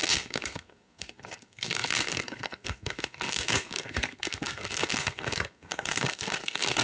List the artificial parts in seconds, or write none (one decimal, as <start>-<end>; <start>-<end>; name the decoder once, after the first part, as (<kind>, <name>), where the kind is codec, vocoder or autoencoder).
0.0-6.8 (codec, SNAC)